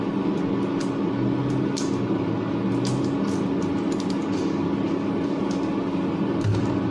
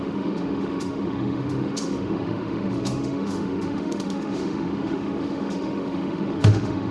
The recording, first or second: first